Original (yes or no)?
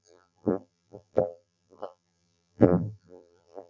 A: no